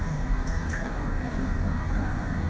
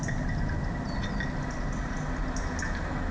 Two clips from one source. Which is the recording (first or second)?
second